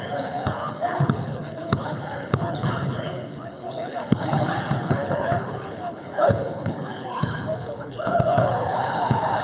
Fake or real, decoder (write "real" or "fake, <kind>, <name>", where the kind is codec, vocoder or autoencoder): fake, codec, HILCodec